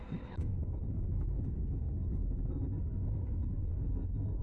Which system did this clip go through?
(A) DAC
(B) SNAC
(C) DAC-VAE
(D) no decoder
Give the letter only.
B